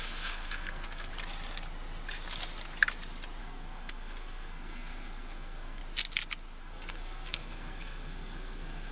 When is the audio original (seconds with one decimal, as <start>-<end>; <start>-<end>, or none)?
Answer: 1.1-3.4; 5.8-6.6